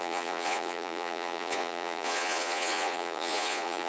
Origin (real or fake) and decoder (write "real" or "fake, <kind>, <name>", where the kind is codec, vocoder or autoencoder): fake, vocoder, Vocos